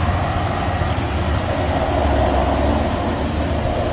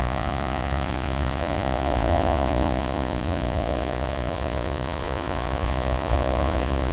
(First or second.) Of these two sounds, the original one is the first